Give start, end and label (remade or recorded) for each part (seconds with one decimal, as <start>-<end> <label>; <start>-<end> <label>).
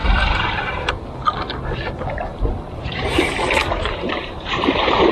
0.0-0.9 remade; 0.9-2.3 recorded; 2.3-3.2 remade; 3.2-3.6 recorded; 3.6-5.1 remade